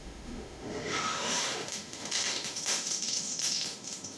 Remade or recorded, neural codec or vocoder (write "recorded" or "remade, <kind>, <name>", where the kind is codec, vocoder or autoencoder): remade, autoencoder, DAC-VAE